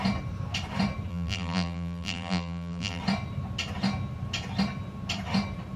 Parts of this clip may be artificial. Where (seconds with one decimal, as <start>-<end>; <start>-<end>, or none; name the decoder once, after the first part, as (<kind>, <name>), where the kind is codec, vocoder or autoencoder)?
1.1-3.0 (vocoder, BigVGAN v2)